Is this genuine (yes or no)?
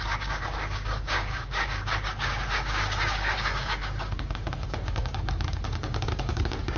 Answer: no